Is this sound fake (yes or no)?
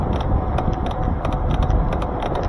no